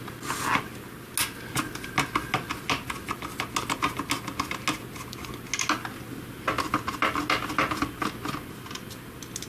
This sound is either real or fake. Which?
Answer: real